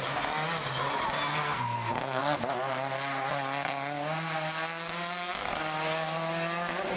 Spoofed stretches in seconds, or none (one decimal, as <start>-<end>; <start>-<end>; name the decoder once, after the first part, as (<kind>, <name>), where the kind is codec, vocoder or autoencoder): 1.3-2.2 (codec, SNAC)